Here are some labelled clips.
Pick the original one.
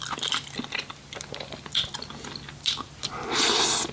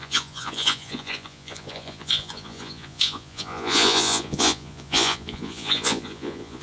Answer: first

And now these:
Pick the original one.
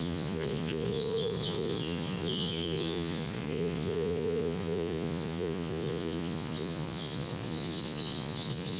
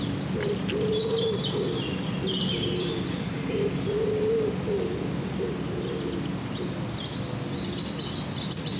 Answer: second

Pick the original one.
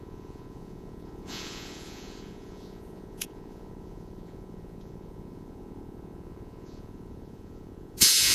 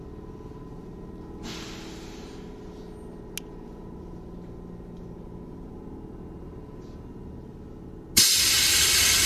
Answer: second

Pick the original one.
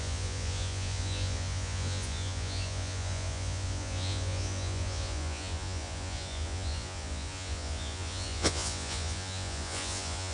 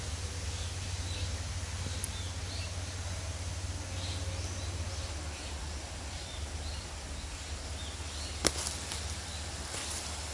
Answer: second